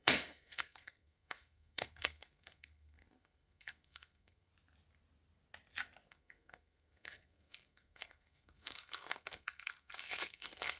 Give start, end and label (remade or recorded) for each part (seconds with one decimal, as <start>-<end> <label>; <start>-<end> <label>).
0.0-4.5 remade; 4.5-6.1 recorded; 6.1-10.8 remade